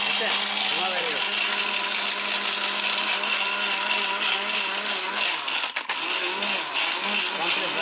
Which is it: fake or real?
real